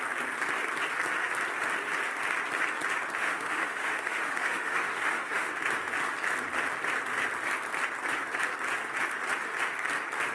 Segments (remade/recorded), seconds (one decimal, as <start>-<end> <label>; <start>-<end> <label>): 0.0-3.2 recorded; 3.2-5.5 remade; 5.5-10.3 recorded